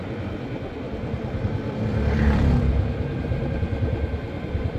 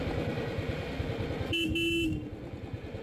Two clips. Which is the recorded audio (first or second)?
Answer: second